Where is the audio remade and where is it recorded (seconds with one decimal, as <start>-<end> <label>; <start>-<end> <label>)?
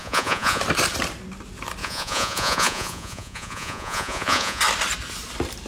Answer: 0.0-0.6 remade; 0.6-1.8 recorded; 1.8-4.6 remade; 4.6-5.7 recorded